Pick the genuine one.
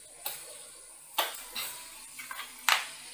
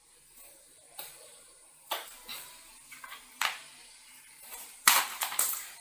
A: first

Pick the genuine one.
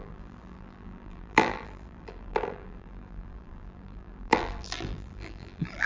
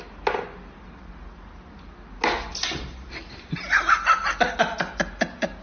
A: second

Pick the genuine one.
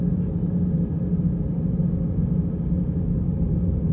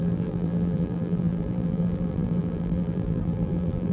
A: first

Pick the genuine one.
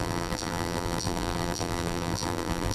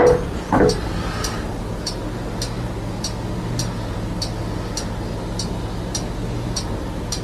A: second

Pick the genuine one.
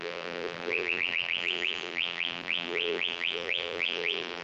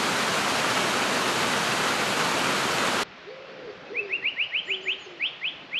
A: second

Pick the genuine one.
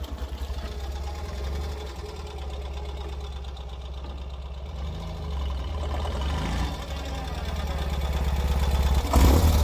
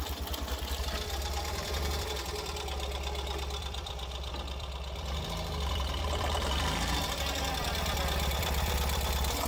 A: first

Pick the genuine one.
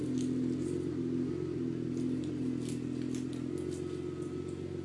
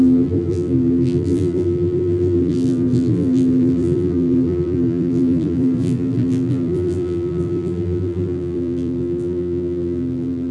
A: first